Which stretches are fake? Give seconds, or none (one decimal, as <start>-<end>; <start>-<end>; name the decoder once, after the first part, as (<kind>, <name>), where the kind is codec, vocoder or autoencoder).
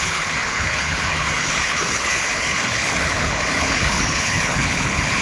0.0-5.2 (codec, HILCodec)